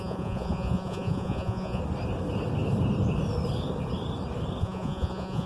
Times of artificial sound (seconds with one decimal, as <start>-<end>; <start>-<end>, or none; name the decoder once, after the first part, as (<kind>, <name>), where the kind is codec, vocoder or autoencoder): 0.0-1.8 (vocoder, Vocos); 4.6-5.5

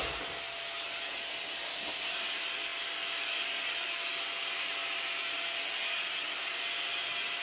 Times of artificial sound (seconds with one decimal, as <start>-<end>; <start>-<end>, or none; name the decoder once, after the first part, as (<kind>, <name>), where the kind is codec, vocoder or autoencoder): none

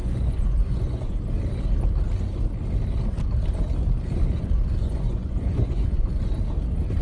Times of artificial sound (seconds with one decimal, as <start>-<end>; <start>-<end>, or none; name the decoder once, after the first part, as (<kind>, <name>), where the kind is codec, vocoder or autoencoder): 0.0-1.2 (vocoder, Vocos); 4.8-6.2

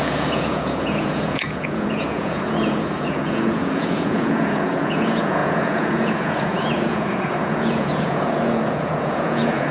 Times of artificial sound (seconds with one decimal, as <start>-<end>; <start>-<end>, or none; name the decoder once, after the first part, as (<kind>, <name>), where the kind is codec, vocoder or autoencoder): 0.0-9.7 (vocoder, Vocos)

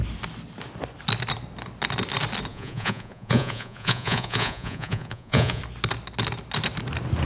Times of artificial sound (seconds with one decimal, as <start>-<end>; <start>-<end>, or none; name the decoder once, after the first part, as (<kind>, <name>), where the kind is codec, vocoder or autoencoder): 2.5-5.6 (vocoder, Vocos)